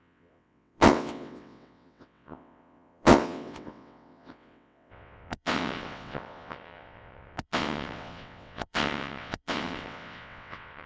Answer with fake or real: fake